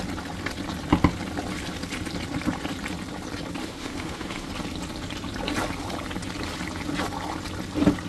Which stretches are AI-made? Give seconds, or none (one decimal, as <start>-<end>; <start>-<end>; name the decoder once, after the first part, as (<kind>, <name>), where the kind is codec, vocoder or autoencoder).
3.6-4.5 (autoencoder, DAC-VAE)